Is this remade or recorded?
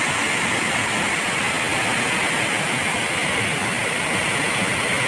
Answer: recorded